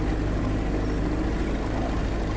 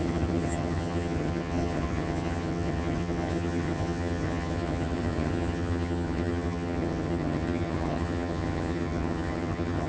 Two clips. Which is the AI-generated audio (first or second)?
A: second